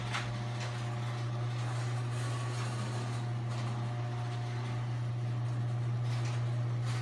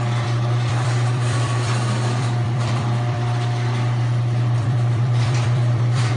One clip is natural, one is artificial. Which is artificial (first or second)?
second